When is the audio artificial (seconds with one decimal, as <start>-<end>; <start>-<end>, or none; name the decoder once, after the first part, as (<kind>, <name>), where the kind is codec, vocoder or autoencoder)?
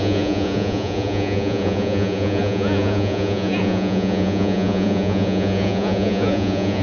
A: 0.0-6.8 (vocoder, Vocos)